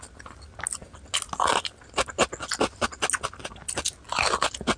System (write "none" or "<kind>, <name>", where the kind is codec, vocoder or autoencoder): none